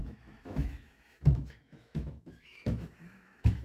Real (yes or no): no